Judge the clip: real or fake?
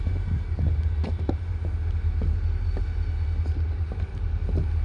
real